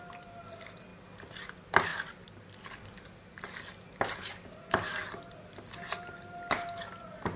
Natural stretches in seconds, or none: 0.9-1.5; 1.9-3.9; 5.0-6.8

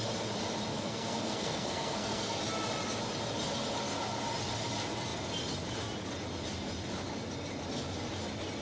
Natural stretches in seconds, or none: 0.0-0.7; 2.4-8.6

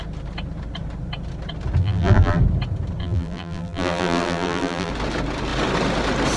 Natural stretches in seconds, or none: 0.0-1.8; 2.4-3.0; 4.9-6.4

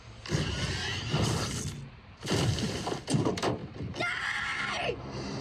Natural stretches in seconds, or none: 3.6-4.4

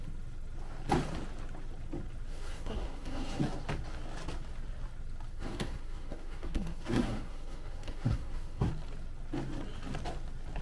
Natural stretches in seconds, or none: 0.0-2.3; 3.4-5.3; 8.7-10.6

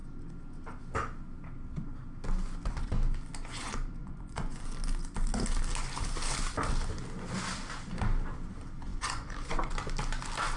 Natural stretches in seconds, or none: 0.0-4.0; 4.7-8.9; 9.7-10.6

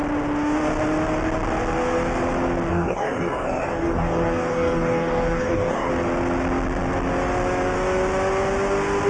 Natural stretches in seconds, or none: 0.0-2.7; 5.9-9.1